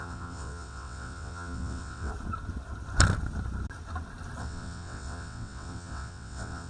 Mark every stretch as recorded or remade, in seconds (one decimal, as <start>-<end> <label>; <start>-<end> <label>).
0.0-2.1 remade; 2.1-4.4 recorded; 4.4-6.7 remade

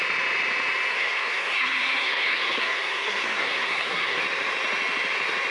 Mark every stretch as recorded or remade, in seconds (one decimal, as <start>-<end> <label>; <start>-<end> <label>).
0.0-0.9 recorded; 0.9-4.2 remade; 4.2-5.5 recorded

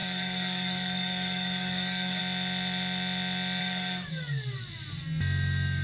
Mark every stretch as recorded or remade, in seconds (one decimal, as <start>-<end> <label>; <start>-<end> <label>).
0.0-2.2 remade; 2.2-3.6 recorded; 3.6-4.7 remade; 4.7-5.8 recorded